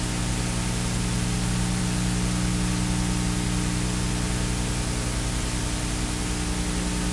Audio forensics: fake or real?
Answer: real